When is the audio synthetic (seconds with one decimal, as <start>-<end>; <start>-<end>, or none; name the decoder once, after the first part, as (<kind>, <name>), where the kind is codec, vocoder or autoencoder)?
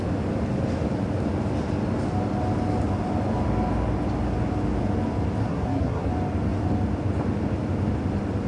5.4-6.1 (codec, SNAC)